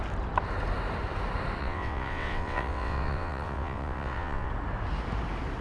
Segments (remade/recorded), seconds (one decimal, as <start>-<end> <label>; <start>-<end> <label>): 0.0-1.6 recorded; 1.6-4.5 remade; 4.5-5.6 recorded